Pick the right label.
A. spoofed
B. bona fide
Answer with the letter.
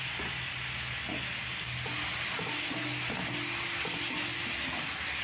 B